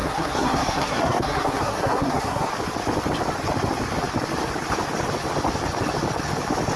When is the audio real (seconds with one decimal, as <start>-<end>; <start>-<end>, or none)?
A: 2.5-6.8